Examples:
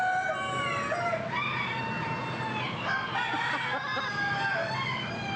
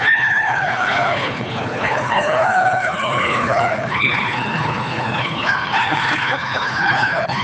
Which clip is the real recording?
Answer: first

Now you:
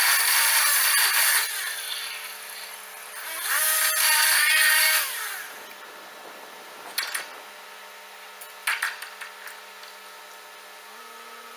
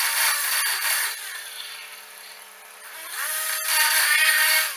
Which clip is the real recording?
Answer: first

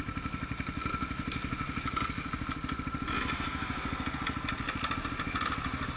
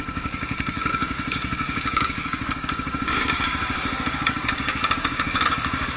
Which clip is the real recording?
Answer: first